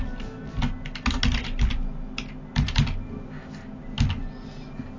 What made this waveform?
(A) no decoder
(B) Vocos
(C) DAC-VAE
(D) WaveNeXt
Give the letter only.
A